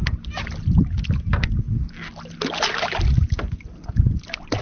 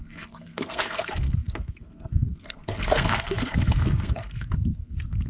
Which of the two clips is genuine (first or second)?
first